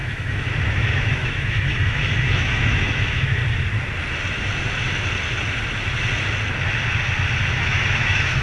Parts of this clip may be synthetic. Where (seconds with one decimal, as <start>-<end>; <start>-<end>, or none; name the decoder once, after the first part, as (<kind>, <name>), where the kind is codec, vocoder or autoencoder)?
0.0-3.4 (autoencoder, DAC-VAE); 7.5-8.4